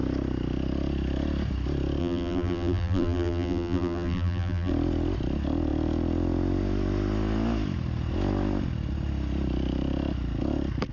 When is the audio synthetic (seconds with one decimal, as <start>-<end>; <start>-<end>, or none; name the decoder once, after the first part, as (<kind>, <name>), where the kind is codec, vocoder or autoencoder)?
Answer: 2.0-4.7 (vocoder, BigVGAN v2)